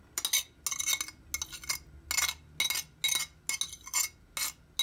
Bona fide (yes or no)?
yes